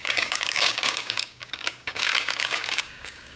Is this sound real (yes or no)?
no